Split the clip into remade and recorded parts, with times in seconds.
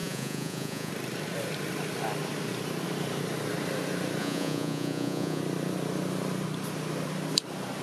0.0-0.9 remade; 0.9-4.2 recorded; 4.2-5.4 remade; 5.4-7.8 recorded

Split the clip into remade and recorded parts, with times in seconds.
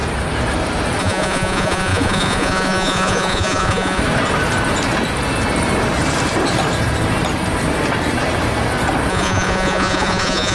0.0-1.0 recorded; 1.0-4.0 remade; 4.0-9.1 recorded; 9.1-10.5 remade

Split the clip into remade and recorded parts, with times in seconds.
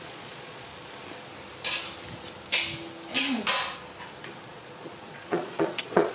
0.0-0.7 remade; 0.7-4.4 recorded; 4.4-6.1 remade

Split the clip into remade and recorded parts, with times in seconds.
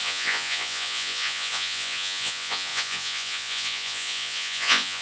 0.0-5.0 remade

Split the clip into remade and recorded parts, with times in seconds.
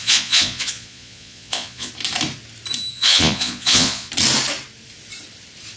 0.0-1.9 remade; 1.9-2.9 recorded; 2.9-4.1 remade; 4.1-5.8 recorded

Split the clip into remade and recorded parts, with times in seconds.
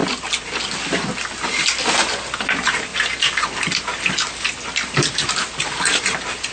0.0-6.5 recorded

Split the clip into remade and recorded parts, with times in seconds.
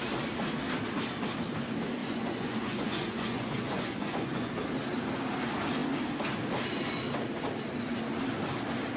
0.0-2.0 recorded; 2.0-4.5 remade; 4.5-9.0 recorded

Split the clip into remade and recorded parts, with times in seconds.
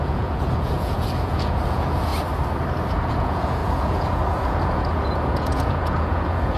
0.0-2.1 remade; 2.1-2.9 recorded; 2.9-6.6 remade